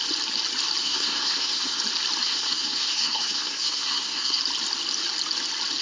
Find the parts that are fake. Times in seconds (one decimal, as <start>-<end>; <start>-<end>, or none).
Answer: 0.8-1.8; 2.2-4.4